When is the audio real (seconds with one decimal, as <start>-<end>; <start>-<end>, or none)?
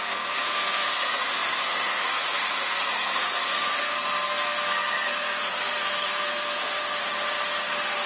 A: 7.0-7.6